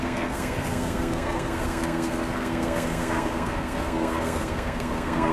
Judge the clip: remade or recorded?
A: remade